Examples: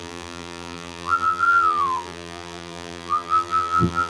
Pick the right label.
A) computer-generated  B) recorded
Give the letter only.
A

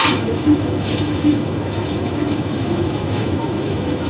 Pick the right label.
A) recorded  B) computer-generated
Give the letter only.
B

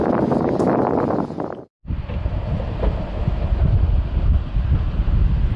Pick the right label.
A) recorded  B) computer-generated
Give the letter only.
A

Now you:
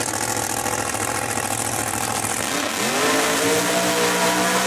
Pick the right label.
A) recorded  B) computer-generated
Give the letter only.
A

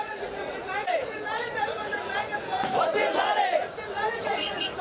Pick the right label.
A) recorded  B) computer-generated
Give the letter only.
B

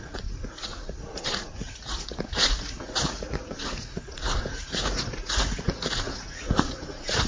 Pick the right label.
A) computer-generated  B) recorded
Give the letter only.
A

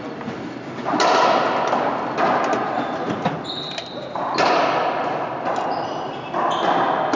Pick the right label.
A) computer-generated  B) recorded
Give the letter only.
B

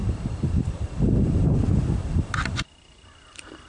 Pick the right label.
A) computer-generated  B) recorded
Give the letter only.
B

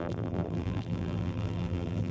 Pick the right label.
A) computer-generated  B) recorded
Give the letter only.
A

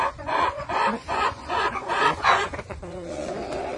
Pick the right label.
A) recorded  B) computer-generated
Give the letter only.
B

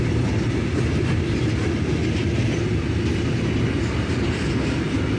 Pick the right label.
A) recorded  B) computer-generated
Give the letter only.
A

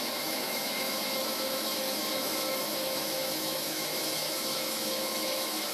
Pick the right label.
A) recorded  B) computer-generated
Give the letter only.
B